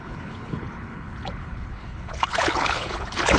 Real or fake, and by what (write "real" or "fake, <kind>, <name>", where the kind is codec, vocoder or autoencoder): fake, codec, HILCodec